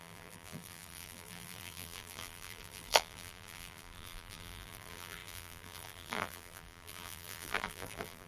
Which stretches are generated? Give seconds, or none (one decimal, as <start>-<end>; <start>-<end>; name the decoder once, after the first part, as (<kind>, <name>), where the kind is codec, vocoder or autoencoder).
0.0-8.3 (vocoder, BigVGAN v2)